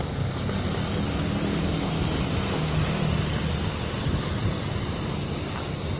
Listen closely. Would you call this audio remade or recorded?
recorded